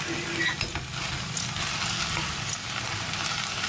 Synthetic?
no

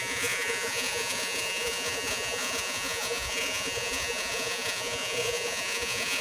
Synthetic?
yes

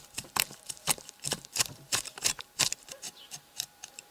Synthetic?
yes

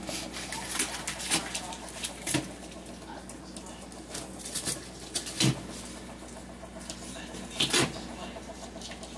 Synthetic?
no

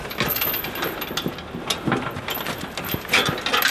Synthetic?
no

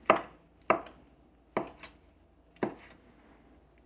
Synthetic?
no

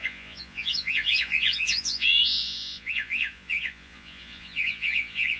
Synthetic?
yes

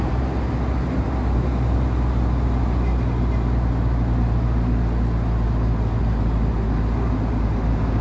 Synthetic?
no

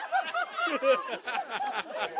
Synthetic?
no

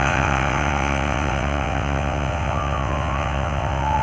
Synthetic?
yes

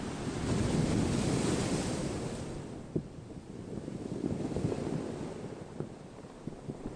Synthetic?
no